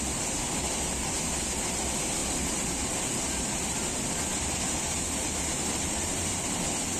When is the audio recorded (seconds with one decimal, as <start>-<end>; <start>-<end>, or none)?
0.0-2.2; 3.8-4.3; 6.3-7.0